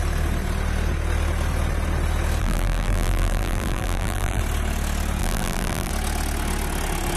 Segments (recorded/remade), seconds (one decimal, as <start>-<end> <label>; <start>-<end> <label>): 0.0-2.4 recorded; 2.4-4.4 remade; 4.4-5.2 recorded; 5.2-5.9 remade; 5.9-7.2 recorded